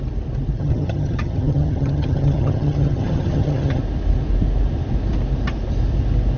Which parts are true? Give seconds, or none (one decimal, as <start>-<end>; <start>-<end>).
0.0-0.6; 3.8-6.4